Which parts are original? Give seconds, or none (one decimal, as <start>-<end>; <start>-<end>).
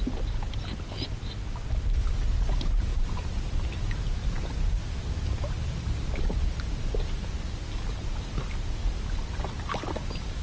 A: 0.0-10.4